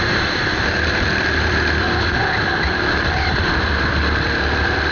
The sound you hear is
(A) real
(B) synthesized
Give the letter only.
B